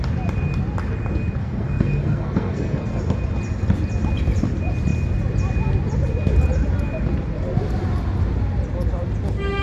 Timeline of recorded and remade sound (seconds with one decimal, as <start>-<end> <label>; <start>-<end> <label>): 0.0-1.4 recorded; 1.4-3.0 remade; 3.0-9.6 recorded